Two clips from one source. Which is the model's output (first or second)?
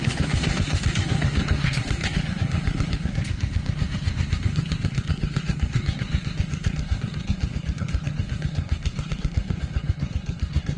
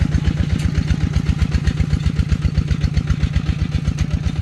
first